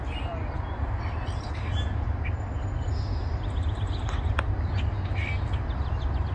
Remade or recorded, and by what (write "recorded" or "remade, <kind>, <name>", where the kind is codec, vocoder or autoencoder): recorded